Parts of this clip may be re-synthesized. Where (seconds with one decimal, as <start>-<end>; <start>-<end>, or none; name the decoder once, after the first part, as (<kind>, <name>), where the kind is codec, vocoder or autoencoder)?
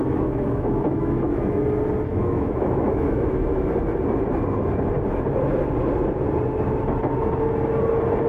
0.0-1.6 (autoencoder, DAC-VAE); 2.1-3.7